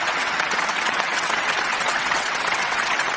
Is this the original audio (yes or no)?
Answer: no